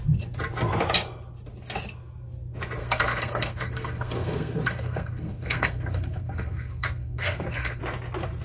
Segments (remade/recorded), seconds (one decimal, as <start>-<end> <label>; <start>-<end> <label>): 0.0-2.8 recorded; 2.8-7.8 remade; 7.8-8.4 recorded